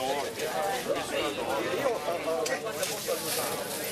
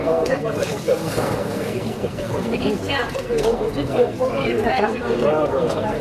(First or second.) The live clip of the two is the first